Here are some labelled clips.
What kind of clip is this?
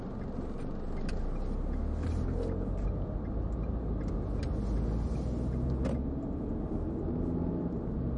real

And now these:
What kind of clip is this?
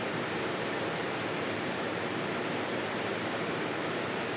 fake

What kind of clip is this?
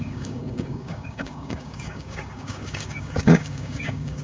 fake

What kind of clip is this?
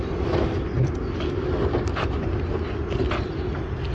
real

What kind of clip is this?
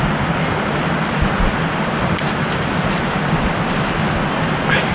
real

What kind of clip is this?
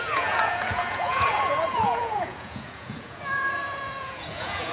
fake